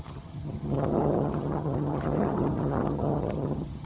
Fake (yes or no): yes